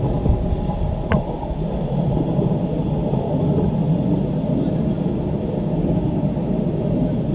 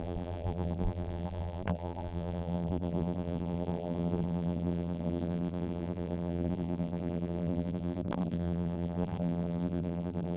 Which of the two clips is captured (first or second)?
first